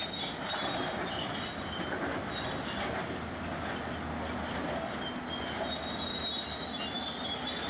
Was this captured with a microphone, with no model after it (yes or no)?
yes